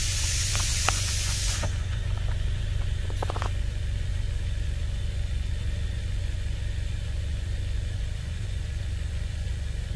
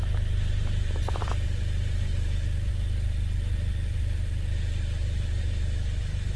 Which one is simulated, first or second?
first